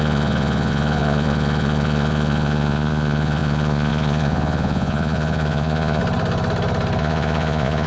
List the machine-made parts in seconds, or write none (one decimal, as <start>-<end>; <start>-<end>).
0.0-6.0; 7.0-7.9